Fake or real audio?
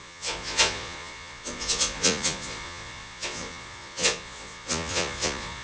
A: fake